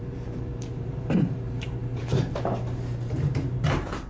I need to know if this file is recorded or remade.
remade